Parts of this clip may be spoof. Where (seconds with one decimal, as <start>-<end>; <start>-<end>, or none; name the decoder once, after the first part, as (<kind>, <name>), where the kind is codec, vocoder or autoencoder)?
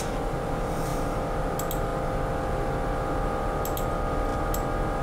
none